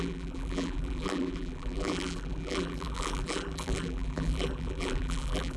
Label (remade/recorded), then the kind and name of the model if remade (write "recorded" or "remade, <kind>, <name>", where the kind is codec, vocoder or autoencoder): remade, vocoder, BigVGAN v2